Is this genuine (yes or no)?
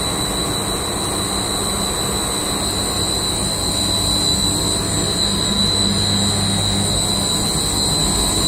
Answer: yes